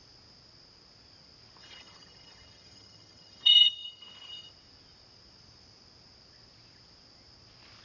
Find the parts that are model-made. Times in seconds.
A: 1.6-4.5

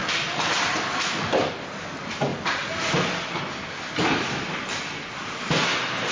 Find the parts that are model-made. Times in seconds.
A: none

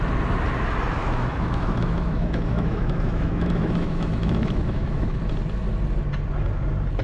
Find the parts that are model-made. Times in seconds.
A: 1.0-5.2

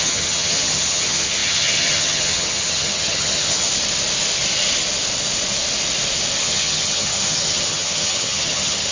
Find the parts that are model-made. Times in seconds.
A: 0.0-3.7; 6.4-8.9

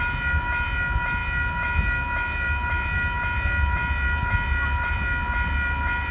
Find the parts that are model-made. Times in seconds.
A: none